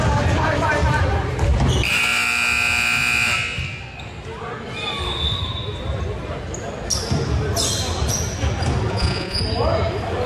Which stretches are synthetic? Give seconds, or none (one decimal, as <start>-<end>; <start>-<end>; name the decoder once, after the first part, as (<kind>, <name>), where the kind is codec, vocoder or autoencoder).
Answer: 8.9-9.4 (vocoder, Vocos)